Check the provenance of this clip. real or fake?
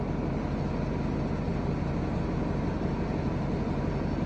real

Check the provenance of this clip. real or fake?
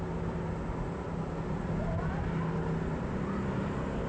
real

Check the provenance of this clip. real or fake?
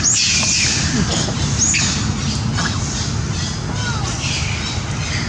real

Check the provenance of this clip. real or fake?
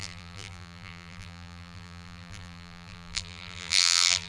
fake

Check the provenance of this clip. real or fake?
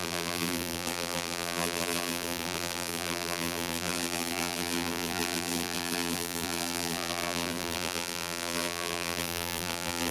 fake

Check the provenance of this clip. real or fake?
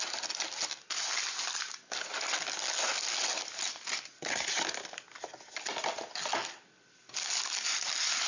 real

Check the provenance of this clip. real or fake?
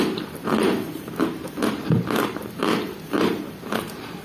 fake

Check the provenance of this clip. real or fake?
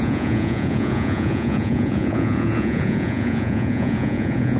fake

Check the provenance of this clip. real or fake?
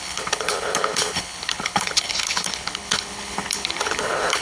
fake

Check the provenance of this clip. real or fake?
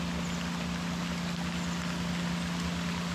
real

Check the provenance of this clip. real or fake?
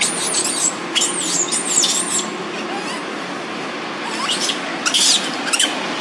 real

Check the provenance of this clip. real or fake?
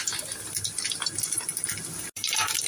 real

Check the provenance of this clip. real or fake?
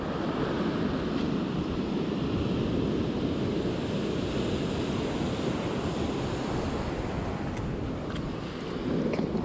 real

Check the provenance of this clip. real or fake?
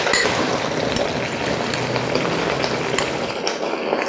real